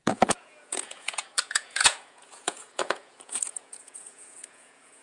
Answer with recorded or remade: remade